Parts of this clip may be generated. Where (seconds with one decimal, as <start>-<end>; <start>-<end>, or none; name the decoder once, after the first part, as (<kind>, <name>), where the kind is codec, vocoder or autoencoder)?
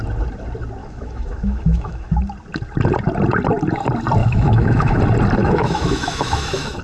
0.8-2.2 (autoencoder, DAC-VAE); 4.2-5.0; 5.4-6.8